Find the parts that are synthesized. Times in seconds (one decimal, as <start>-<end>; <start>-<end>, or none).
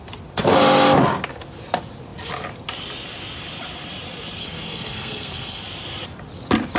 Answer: 4.4-5.6